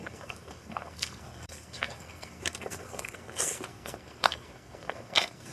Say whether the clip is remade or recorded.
remade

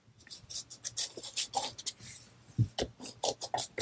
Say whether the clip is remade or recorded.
recorded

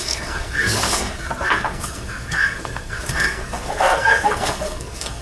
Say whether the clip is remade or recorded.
remade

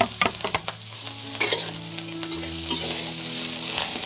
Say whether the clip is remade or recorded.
recorded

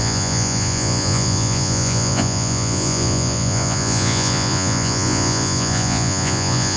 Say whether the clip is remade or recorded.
remade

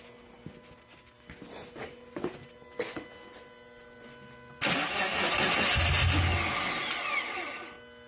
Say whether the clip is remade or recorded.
recorded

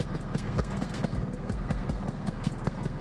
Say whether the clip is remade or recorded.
remade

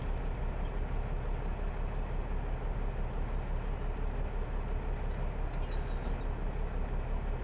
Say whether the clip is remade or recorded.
recorded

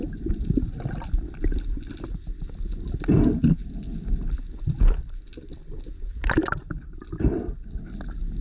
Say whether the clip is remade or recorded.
recorded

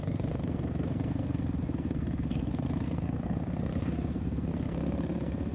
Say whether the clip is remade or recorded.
remade